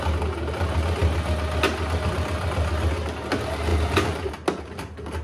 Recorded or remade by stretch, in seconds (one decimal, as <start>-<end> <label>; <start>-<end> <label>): 0.0-5.2 recorded